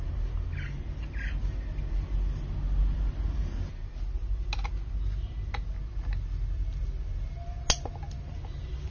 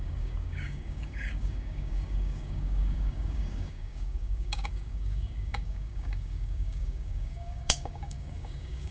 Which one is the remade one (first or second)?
second